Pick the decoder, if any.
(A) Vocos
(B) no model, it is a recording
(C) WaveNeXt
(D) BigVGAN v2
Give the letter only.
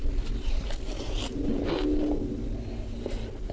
B